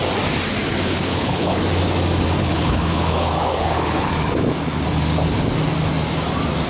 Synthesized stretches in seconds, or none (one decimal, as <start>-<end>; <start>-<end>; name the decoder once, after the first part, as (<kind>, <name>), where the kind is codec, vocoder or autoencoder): 0.6-1.6 (codec, HILCodec); 2.4-4.1

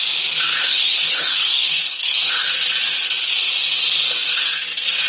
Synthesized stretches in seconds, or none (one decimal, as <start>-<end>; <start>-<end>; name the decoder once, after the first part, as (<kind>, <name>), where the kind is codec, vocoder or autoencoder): 0.5-2.5 (codec, HILCodec)